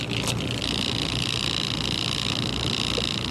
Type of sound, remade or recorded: recorded